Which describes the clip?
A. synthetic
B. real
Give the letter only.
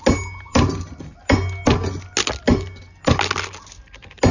B